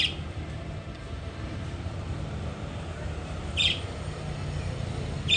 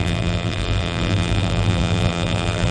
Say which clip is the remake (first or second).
second